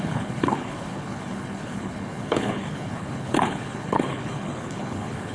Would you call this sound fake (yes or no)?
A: yes